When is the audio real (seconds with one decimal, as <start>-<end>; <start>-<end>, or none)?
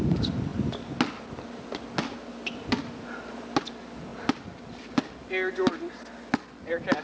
0.0-7.0